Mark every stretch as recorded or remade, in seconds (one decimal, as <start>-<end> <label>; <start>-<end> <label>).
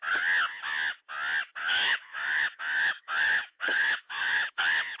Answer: 0.0-1.6 recorded; 1.6-4.6 remade; 4.6-5.0 recorded